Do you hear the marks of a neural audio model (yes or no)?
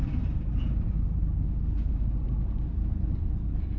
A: no